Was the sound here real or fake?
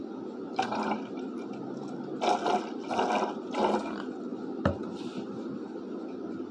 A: real